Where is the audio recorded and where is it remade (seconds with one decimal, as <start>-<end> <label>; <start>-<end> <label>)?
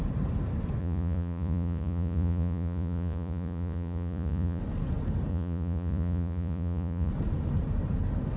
0.0-0.8 recorded; 0.8-4.6 remade; 4.6-5.3 recorded; 5.3-7.1 remade; 7.1-8.4 recorded